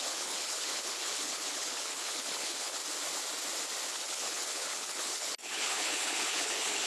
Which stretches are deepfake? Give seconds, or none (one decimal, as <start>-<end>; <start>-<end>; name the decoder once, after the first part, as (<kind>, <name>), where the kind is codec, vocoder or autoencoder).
0.0-2.8 (codec, HILCodec); 3.9-6.9